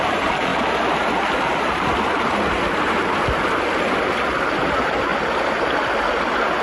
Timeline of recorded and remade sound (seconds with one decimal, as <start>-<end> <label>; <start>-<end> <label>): 0.0-0.5 remade; 0.5-4.5 recorded; 4.5-5.1 remade; 5.1-6.6 recorded